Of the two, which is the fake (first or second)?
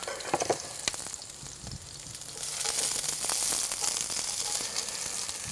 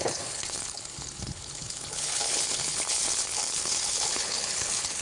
second